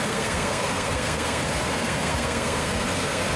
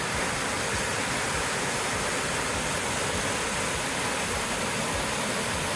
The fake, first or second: first